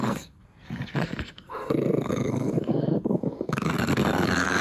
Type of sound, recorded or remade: remade